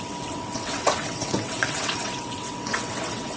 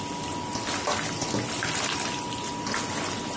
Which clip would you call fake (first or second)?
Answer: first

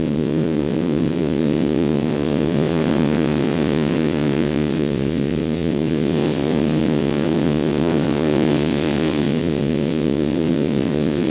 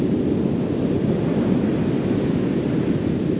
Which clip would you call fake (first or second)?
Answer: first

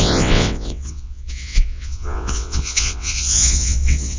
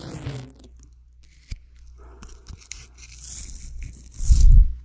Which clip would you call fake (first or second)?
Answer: first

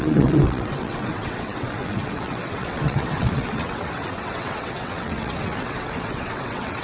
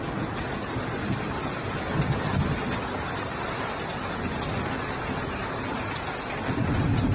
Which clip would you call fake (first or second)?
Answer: first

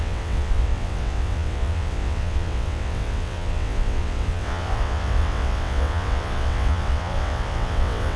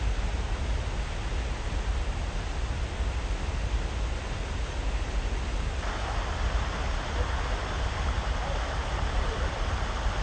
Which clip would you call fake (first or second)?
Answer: first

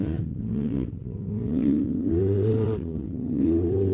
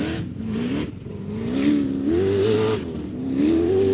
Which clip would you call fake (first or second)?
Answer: first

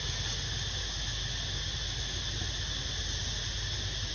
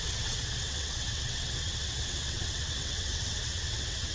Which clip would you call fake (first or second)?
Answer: second